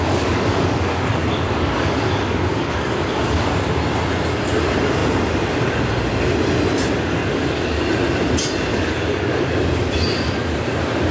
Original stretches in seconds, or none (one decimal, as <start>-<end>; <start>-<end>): 3.5-7.2; 7.8-8.7; 9.5-11.1